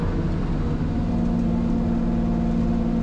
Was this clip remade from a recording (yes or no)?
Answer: no